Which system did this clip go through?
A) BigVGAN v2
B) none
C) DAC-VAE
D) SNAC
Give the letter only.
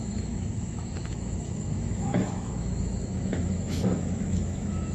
C